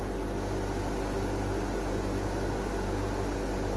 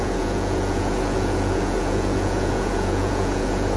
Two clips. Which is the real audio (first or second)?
first